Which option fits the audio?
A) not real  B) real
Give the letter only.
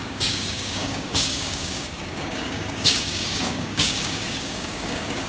A